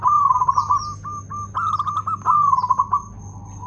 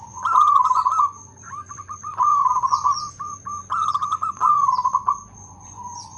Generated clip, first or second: second